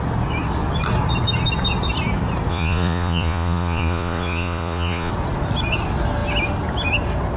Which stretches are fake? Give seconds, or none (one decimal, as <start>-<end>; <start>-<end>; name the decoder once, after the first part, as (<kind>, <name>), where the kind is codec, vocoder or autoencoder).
2.5-5.1 (vocoder, Vocos)